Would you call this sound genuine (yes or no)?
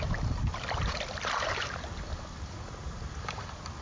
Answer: yes